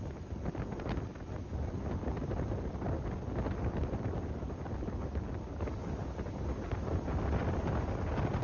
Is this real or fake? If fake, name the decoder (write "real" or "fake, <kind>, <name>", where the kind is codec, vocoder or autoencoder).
real